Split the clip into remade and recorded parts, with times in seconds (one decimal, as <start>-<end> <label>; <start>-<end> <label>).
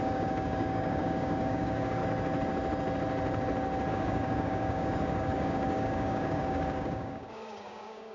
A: 0.0-2.0 remade; 2.0-3.9 recorded; 3.9-8.1 remade